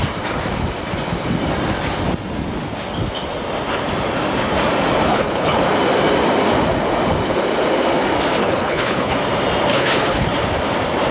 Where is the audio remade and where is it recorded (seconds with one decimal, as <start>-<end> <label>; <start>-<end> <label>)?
0.0-5.1 recorded; 5.1-5.6 remade; 5.6-8.4 recorded; 8.4-9.1 remade; 9.1-9.7 recorded; 9.7-10.3 remade; 10.3-11.1 recorded